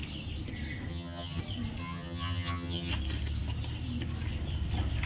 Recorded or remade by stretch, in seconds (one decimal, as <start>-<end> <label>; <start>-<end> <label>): 0.0-0.9 recorded; 0.9-1.4 remade; 1.4-1.8 recorded; 1.8-2.9 remade; 2.9-5.1 recorded